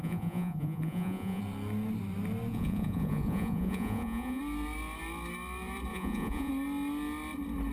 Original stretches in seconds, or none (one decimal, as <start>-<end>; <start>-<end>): 1.4-2.5; 4.4-5.9; 6.5-7.7